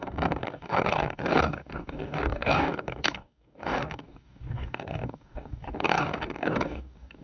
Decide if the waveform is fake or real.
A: fake